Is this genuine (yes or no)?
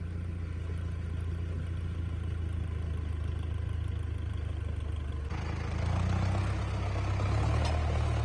yes